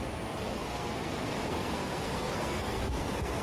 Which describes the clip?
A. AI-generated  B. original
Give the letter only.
A